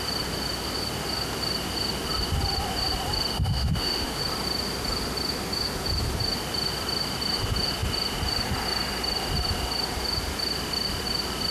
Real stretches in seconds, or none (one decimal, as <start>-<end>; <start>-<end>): 0.0-3.3; 4.2-11.5